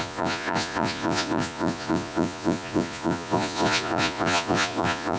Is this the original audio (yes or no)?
no